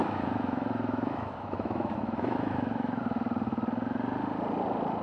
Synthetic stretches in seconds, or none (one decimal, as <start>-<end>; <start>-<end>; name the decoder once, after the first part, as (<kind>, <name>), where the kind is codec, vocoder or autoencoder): 0.0-3.0 (autoencoder, DAC-VAE)